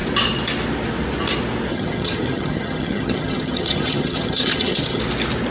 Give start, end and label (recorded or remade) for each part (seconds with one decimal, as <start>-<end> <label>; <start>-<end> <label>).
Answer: 0.0-1.7 recorded; 1.7-5.0 remade; 5.0-5.5 recorded